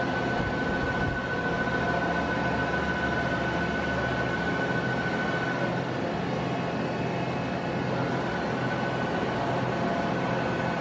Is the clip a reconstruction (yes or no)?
no